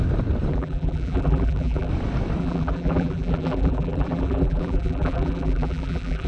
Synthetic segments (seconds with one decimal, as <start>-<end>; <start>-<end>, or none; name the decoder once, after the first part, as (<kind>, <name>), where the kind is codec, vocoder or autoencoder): 0.5-1.9 (vocoder, BigVGAN v2); 2.4-6.3